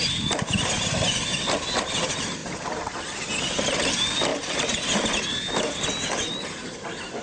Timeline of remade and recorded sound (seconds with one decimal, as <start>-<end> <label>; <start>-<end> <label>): 0.0-7.2 recorded